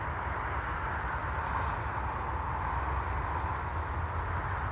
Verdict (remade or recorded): recorded